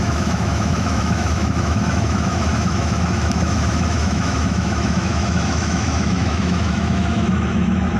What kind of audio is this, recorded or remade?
remade